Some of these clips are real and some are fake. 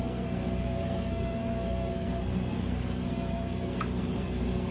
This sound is fake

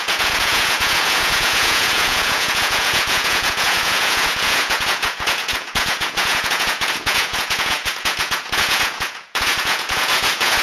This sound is fake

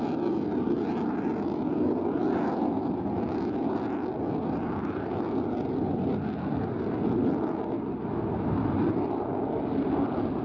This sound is real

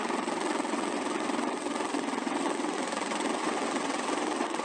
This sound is fake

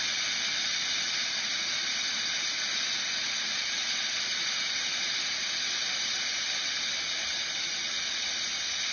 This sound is real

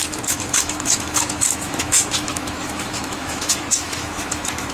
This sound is fake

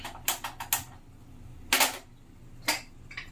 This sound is real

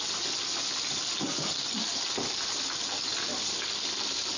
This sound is real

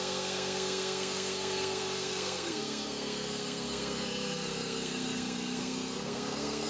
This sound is fake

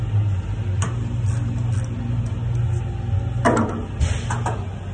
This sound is real